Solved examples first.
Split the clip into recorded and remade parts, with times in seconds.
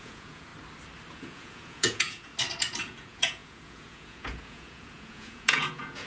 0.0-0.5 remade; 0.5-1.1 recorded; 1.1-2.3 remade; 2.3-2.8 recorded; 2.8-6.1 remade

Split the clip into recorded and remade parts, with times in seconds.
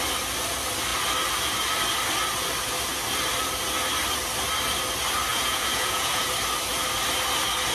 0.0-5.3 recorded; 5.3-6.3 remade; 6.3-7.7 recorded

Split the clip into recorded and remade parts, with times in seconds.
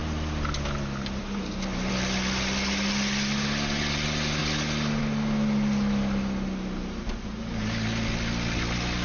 0.0-9.0 recorded